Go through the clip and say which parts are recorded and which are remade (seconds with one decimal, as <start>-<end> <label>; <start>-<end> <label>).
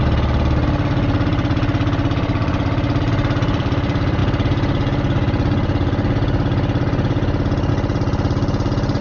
0.0-9.0 recorded